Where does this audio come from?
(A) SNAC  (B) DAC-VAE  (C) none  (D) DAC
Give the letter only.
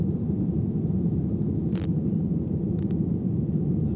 C